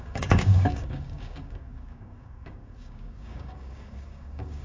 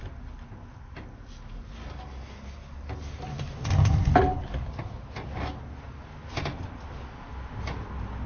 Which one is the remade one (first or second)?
first